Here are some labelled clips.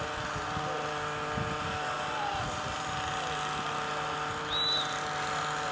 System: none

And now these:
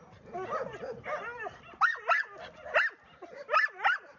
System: none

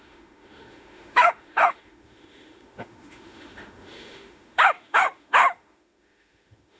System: autoencoder, DAC-VAE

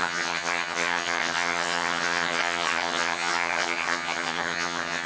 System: vocoder, HiFi-GAN